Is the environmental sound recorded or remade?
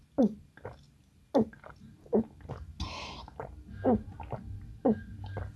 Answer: recorded